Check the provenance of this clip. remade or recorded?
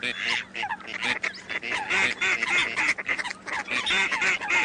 recorded